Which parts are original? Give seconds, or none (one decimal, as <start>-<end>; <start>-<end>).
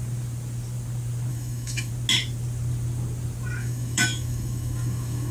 0.0-1.3; 1.9-3.6